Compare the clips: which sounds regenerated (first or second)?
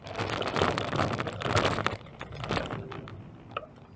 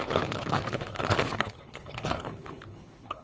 second